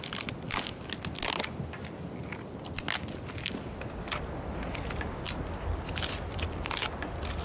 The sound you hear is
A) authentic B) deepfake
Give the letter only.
A